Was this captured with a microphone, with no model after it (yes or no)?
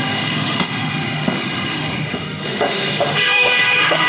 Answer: no